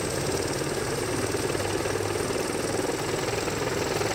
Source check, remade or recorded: recorded